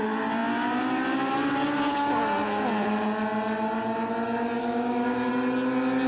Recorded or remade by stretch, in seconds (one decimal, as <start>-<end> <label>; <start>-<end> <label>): 0.0-4.6 recorded; 4.6-5.3 remade; 5.3-6.1 recorded